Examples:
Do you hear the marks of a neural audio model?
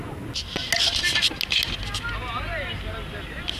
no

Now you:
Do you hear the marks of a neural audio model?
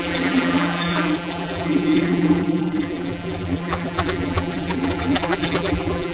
yes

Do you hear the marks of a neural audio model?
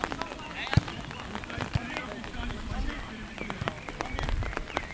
yes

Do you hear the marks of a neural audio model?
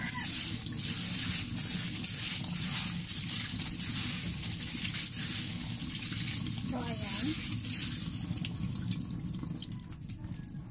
no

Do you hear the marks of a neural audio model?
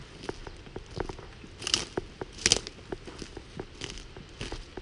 no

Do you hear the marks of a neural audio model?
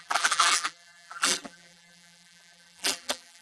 yes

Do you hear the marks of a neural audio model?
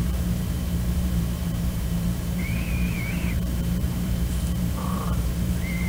yes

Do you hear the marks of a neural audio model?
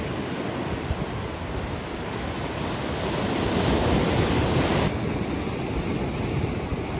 no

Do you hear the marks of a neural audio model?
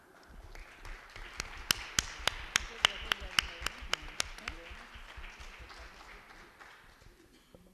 no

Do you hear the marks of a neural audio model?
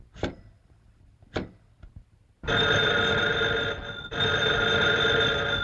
no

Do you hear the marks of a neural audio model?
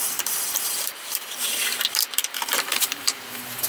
yes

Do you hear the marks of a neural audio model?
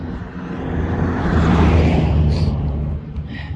yes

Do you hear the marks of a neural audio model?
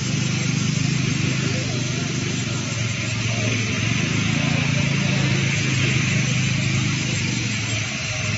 no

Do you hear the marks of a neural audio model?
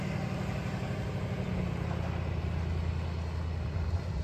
no